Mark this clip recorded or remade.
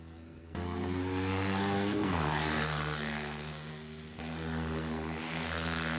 remade